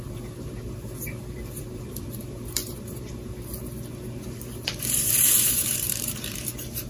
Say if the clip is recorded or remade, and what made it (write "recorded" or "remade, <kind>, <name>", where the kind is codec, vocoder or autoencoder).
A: remade, vocoder, BigVGAN v2